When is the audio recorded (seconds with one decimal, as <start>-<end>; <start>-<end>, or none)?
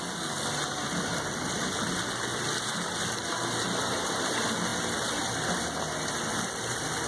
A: 0.0-7.1